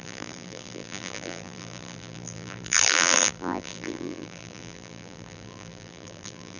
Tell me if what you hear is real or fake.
fake